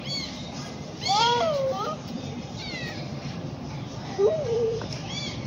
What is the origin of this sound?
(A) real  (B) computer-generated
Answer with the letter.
B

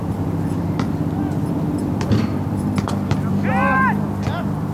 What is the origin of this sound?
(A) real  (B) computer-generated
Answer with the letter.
B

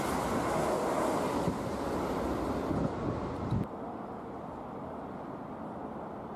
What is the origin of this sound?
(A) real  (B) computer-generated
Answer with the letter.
A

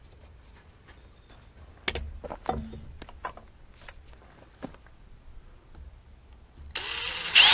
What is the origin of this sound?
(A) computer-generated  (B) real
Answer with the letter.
B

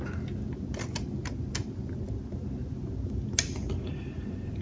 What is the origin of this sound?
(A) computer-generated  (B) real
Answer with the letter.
B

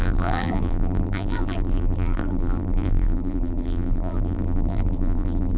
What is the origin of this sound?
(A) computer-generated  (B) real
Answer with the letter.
A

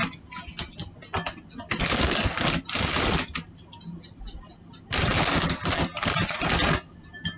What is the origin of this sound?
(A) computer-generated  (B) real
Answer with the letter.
B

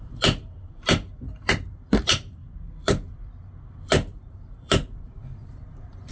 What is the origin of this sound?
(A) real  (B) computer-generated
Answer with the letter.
B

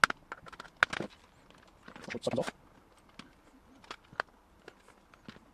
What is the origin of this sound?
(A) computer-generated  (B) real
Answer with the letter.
B